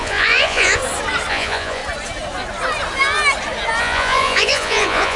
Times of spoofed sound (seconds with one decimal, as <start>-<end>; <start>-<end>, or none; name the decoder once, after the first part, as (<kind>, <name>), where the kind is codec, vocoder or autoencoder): 0.0-0.8 (vocoder, Vocos); 1.3-1.8; 3.8-5.2